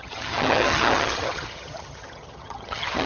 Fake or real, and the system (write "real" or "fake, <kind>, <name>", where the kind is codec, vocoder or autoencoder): fake, vocoder, HiFi-GAN